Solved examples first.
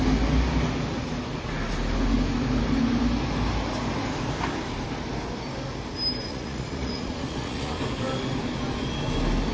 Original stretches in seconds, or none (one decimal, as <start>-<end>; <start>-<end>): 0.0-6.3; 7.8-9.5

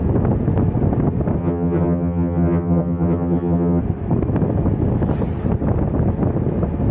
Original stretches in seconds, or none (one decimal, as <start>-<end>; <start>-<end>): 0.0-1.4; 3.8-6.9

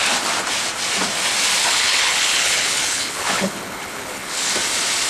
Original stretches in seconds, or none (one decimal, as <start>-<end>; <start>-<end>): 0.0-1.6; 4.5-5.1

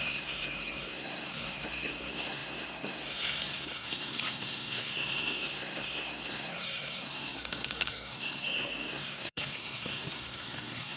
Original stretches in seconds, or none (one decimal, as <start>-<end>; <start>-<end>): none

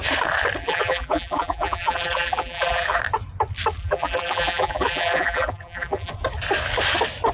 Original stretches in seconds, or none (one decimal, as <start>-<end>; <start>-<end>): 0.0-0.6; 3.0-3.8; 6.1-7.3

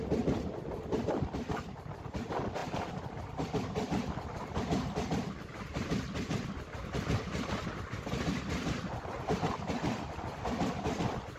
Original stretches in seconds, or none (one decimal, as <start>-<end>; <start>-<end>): 0.0-11.4